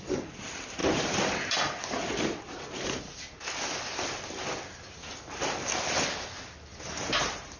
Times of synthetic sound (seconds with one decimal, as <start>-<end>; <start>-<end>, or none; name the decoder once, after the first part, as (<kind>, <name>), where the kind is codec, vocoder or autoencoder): 0.8-3.0 (vocoder, BigVGAN v2); 6.7-7.6